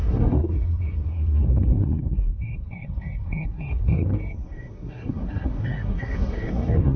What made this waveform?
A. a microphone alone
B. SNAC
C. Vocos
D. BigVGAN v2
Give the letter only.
B